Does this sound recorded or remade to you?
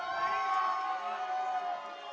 recorded